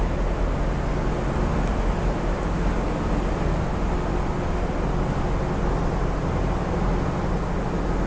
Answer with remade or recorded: recorded